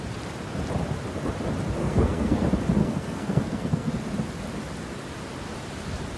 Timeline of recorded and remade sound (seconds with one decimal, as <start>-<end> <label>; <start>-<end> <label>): 0.0-1.8 recorded; 1.8-2.4 remade; 2.4-2.8 recorded; 2.8-3.9 remade; 3.9-6.2 recorded